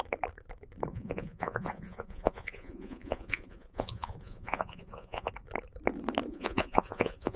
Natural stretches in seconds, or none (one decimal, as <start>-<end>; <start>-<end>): 0.0-0.9; 5.3-6.3